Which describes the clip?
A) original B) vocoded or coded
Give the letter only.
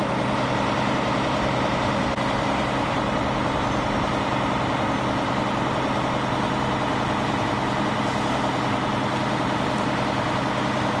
A